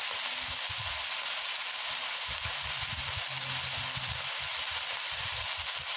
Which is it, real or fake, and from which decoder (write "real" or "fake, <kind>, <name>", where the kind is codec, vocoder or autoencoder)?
real